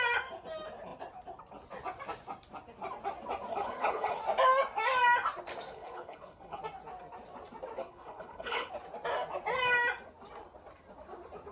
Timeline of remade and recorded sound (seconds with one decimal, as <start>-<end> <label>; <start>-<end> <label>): 0.0-3.5 recorded; 3.5-4.2 remade; 4.2-5.7 recorded; 5.7-6.6 remade; 6.6-7.8 recorded; 7.8-8.7 remade; 8.7-11.5 recorded